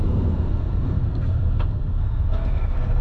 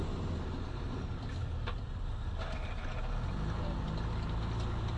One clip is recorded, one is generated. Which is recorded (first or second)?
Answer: second